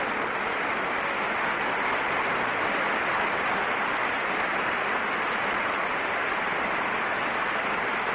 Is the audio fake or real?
real